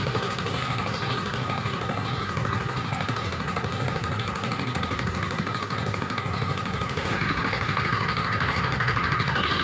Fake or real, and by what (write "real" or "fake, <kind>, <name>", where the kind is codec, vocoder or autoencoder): fake, codec, SNAC